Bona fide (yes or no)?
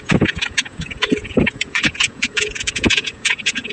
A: no